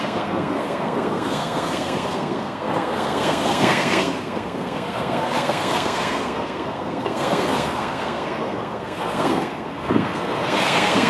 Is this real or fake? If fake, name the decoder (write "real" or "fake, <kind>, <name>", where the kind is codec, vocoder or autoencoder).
fake, codec, SNAC